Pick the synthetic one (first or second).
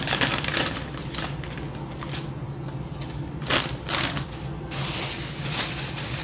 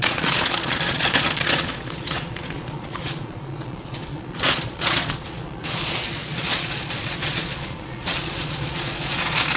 second